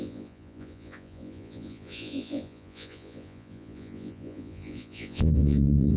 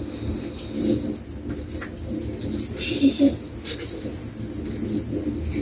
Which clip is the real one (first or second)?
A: second